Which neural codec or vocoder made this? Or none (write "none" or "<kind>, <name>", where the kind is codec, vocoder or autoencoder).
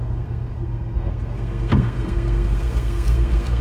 codec, SNAC